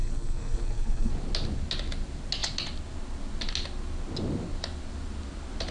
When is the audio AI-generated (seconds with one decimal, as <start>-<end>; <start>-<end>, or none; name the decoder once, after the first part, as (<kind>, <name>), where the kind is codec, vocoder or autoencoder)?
0.0-1.1 (codec, SNAC)